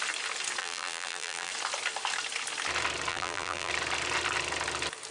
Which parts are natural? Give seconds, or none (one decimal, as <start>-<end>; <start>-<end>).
0.0-0.6; 1.5-3.1; 3.7-5.1